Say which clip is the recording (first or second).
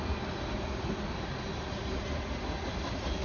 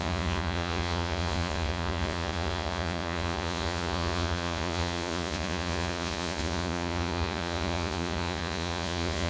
first